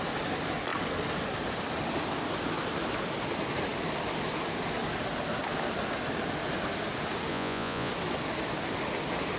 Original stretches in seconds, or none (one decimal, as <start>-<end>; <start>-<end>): 0.0-7.3; 7.9-9.4